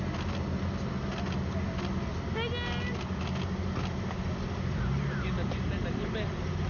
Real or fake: real